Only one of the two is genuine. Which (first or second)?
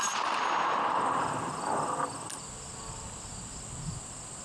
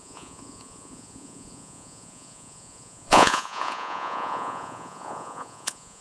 first